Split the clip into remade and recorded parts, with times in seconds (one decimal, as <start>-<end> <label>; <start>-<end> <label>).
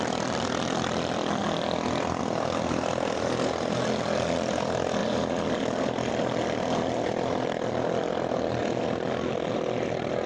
0.0-1.4 remade; 1.4-2.2 recorded; 2.2-5.0 remade; 5.0-6.1 recorded; 6.1-8.6 remade; 8.6-9.2 recorded; 9.2-10.3 remade